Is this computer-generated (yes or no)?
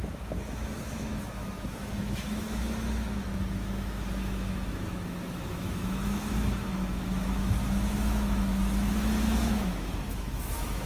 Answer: yes